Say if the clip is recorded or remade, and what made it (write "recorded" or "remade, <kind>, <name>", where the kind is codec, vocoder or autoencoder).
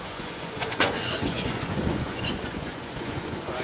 remade, vocoder, Vocos